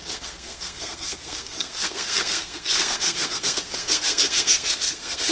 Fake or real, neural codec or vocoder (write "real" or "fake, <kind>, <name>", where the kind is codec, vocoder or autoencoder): fake, codec, SNAC